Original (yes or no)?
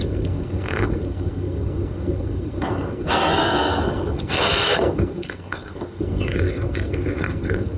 no